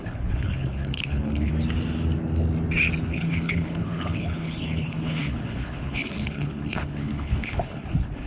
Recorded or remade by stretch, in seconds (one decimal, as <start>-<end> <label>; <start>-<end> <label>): 0.0-1.5 remade; 1.5-3.0 recorded; 3.0-8.3 remade